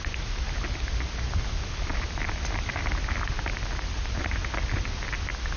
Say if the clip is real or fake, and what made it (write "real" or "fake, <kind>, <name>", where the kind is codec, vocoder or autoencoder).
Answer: real